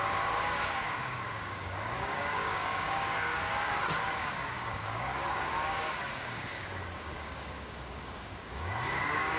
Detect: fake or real fake